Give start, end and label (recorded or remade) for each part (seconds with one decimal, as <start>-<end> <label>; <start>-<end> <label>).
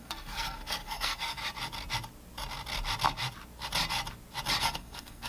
0.0-1.4 remade; 1.4-4.6 recorded; 4.6-5.3 remade